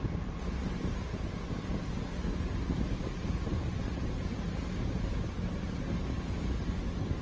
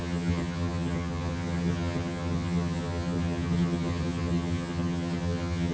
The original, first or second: first